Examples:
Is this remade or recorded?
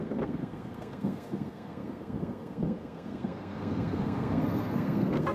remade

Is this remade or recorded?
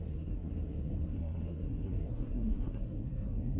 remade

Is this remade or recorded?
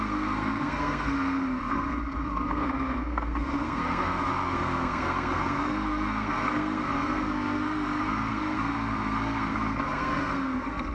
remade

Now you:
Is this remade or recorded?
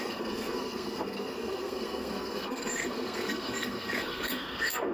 remade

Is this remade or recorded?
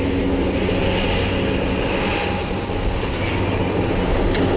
recorded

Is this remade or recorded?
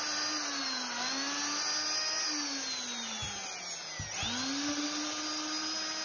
recorded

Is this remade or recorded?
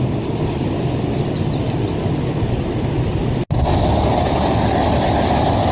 recorded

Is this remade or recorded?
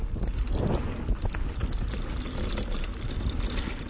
recorded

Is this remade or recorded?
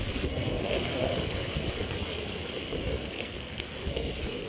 remade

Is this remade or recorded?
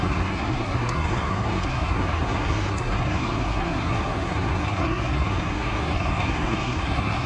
remade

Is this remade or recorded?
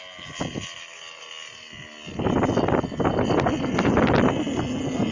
recorded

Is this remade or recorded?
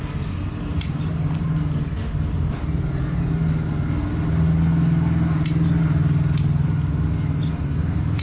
recorded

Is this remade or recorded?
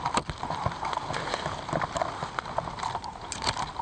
recorded